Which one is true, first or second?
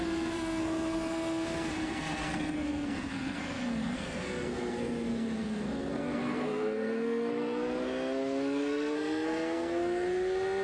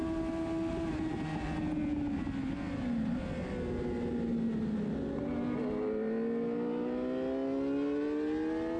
second